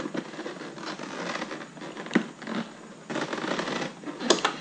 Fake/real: real